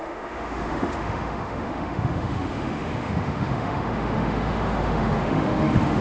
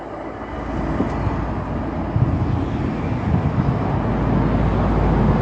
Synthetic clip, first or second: first